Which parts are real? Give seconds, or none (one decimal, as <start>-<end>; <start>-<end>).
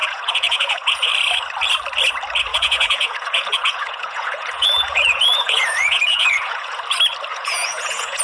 1.1-2.5; 6.8-7.3